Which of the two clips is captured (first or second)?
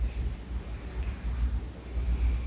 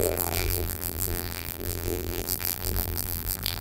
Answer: first